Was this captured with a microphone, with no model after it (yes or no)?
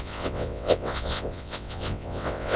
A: no